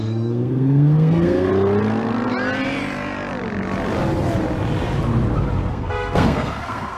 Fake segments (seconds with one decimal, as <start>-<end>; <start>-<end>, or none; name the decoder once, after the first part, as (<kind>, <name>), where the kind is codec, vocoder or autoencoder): 0.0-1.5 (codec, SNAC); 5.7-7.0